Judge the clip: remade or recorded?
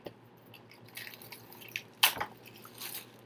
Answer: recorded